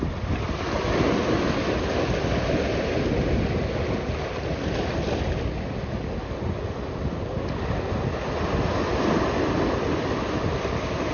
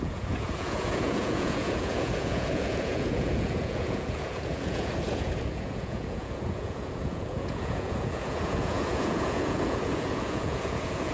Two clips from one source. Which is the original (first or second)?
first